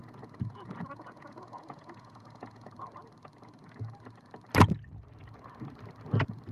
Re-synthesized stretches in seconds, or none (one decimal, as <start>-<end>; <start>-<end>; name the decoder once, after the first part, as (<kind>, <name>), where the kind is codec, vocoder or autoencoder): 0.0-2.7 (vocoder, Vocos)